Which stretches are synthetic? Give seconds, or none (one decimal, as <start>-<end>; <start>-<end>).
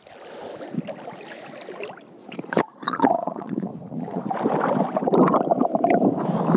2.2-4.2